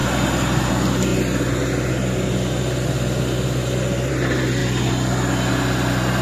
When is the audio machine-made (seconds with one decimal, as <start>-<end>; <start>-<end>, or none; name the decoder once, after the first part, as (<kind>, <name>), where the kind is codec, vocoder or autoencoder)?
none